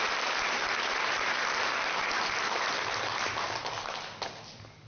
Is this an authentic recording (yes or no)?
yes